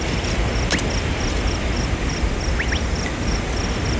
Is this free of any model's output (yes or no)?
yes